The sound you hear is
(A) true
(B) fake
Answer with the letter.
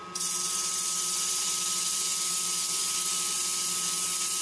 A